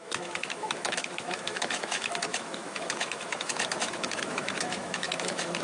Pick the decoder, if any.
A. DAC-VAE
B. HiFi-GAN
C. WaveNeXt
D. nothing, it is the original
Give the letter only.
A